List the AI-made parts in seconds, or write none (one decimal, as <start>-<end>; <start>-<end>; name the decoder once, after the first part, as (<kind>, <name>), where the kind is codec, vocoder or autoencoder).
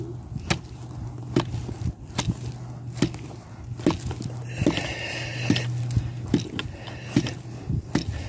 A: none